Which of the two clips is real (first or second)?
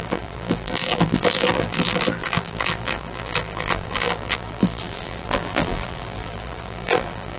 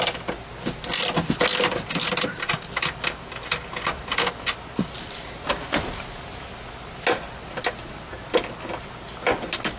second